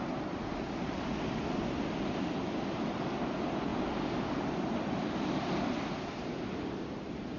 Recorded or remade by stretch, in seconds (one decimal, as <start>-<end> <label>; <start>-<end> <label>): 0.0-7.4 recorded